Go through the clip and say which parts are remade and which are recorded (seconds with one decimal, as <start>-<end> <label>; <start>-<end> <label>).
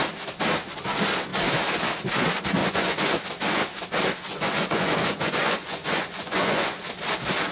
0.0-2.6 recorded; 2.6-3.2 remade; 3.2-4.3 recorded; 4.3-6.9 remade; 6.9-7.5 recorded